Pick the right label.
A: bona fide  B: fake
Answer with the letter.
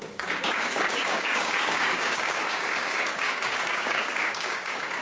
B